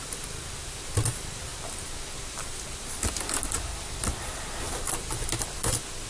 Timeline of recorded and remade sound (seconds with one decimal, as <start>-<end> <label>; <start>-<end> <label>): 0.0-6.1 recorded